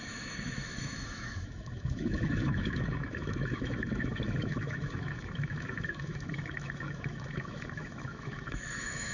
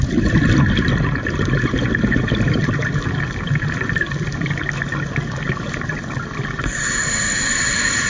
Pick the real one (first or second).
second